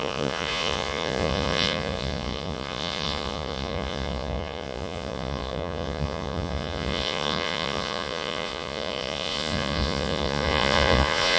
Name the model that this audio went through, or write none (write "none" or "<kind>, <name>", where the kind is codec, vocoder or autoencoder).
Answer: vocoder, Vocos